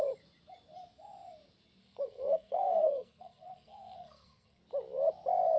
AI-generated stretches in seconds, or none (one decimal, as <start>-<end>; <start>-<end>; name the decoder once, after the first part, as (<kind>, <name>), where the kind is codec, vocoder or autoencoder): 1.8-4.6 (codec, SNAC)

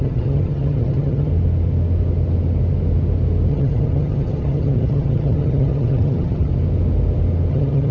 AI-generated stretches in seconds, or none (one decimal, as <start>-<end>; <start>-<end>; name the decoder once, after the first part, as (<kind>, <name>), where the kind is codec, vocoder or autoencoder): 0.0-1.3 (vocoder, HiFi-GAN); 3.5-6.5; 7.5-7.9